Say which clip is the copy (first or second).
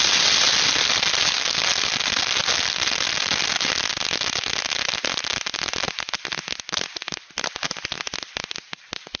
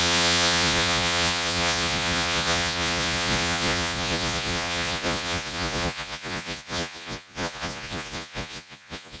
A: second